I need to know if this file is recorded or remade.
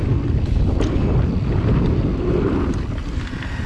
recorded